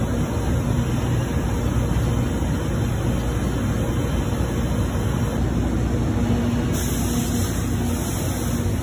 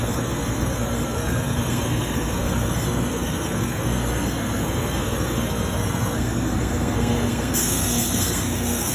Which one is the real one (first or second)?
first